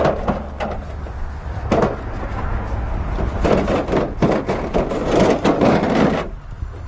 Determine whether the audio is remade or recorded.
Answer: recorded